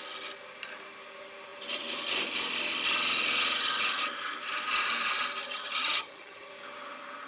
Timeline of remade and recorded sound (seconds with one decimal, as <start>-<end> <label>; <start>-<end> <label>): 0.0-5.4 recorded; 5.4-6.5 remade; 6.5-7.3 recorded